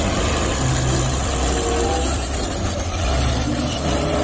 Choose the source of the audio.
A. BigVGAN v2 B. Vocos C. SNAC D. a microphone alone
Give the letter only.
D